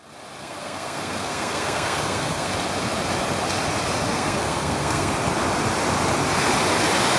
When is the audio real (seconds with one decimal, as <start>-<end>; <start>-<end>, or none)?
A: 0.0-0.4; 2.5-4.1; 5.1-7.2